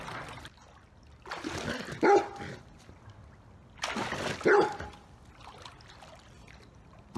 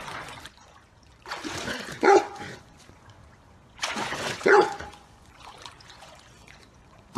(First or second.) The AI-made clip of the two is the second